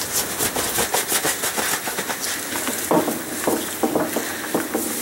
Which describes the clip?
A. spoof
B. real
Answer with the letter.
B